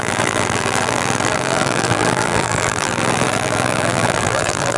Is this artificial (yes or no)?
yes